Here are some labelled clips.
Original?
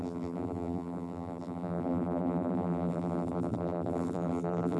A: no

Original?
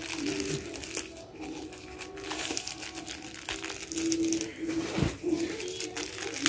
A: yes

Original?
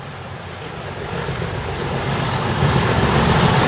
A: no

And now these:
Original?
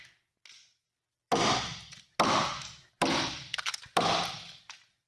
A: yes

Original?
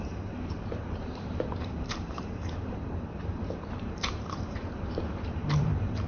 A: no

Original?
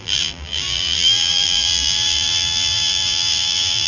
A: no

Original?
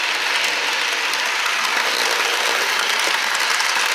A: yes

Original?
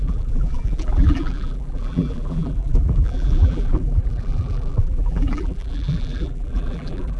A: no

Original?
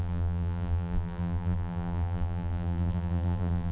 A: no